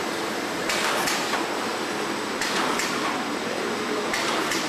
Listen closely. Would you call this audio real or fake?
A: fake